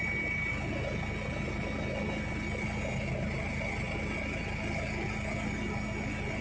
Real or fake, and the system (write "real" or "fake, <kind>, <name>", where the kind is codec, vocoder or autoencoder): real